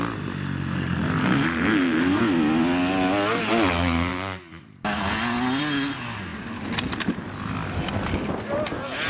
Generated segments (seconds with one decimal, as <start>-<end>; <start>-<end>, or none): 1.2-2.2